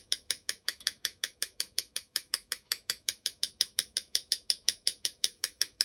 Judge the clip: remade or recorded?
remade